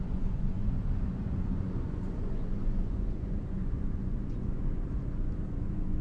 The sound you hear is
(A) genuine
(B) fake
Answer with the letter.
B